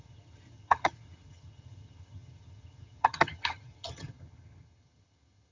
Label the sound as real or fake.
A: fake